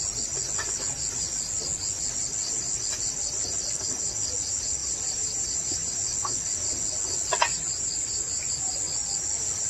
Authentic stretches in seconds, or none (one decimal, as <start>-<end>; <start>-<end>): 0.0-4.8; 5.9-7.5; 8.6-9.7